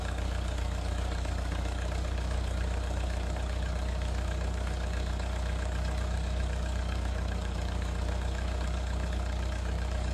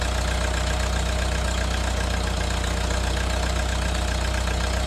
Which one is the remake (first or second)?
first